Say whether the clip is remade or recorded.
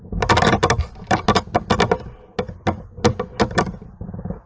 recorded